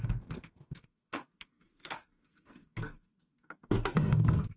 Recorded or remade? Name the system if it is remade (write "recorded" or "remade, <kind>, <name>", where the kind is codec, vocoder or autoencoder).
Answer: remade, codec, SNAC